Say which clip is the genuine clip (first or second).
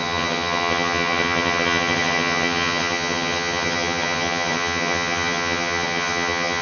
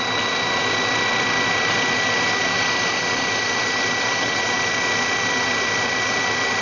second